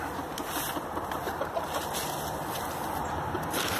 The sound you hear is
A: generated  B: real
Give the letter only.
B